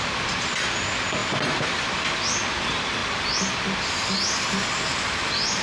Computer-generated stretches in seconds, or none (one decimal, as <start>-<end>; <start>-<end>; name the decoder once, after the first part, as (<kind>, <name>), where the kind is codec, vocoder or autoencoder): none